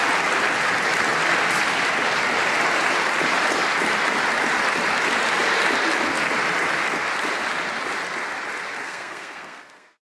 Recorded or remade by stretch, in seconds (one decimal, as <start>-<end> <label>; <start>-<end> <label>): 0.0-8.8 recorded; 8.8-10.1 remade

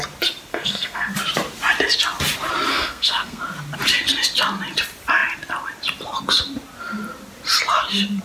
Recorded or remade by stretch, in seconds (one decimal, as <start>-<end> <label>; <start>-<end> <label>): 0.0-0.5 recorded; 0.5-1.1 remade; 1.1-2.7 recorded; 2.7-3.4 remade; 3.4-8.2 recorded